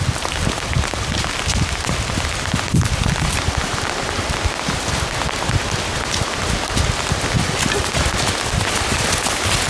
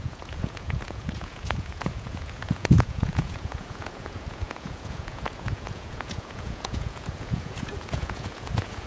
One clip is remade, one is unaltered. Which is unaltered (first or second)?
first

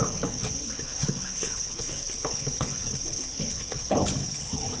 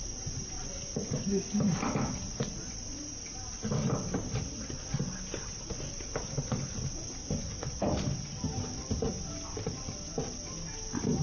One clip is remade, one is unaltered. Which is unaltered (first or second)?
second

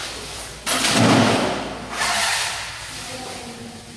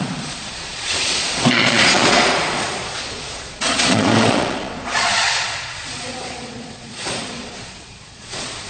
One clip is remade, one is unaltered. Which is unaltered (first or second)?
first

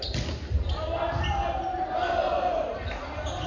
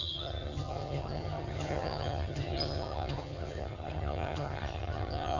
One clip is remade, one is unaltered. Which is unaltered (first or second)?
first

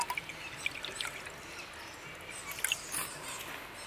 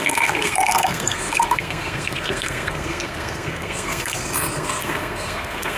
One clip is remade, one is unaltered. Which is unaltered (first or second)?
first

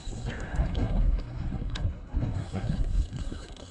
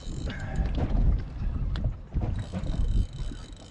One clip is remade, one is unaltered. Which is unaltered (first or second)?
second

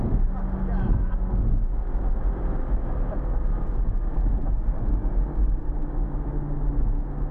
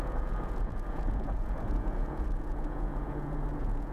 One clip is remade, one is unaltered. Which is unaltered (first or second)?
first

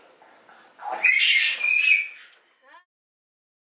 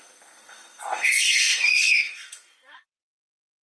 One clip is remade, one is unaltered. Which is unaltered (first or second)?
first